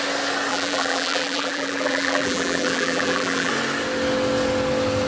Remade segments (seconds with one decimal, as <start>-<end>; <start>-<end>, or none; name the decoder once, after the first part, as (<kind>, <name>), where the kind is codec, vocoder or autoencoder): 0.5-3.5 (vocoder, BigVGAN v2)